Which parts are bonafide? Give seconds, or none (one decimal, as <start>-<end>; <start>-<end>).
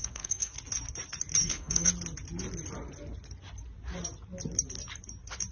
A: 0.5-1.4; 1.9-5.5